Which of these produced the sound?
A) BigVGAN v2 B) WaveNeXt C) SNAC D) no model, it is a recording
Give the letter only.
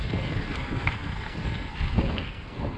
C